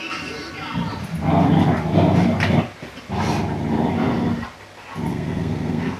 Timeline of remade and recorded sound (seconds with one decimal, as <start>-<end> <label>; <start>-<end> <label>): 0.0-5.1 recorded; 5.1-6.0 remade